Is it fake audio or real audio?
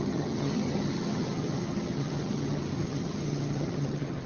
fake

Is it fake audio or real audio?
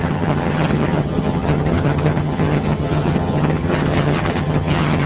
fake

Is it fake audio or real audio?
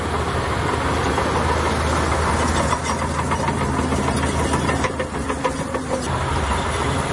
real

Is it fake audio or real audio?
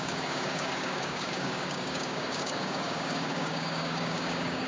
fake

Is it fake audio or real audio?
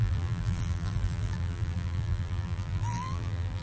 fake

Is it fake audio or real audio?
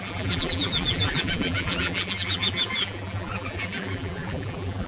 fake